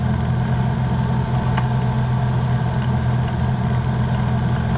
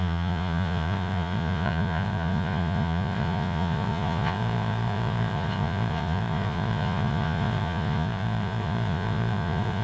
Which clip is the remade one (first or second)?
second